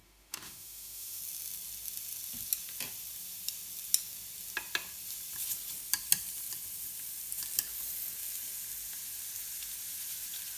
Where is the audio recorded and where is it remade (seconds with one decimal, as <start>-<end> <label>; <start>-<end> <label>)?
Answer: 0.0-1.2 remade; 1.2-10.6 recorded